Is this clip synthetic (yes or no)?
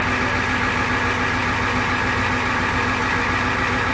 no